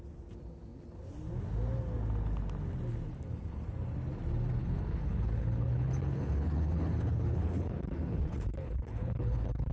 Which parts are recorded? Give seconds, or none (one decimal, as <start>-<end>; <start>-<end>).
0.0-4.6